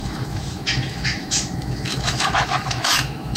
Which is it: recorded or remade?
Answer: remade